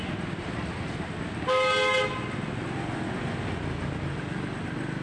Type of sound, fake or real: real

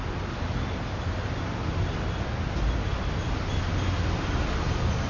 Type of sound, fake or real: real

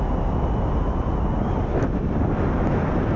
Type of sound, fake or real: real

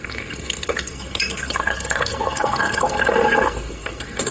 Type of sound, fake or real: fake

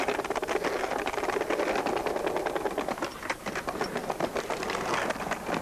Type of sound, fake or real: real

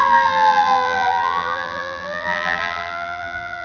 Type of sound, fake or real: fake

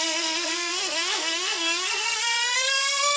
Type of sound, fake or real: fake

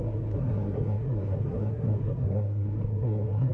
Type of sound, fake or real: fake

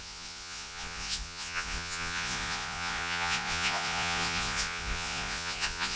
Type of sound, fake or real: fake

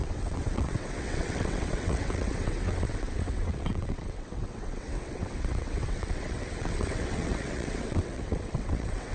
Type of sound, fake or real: fake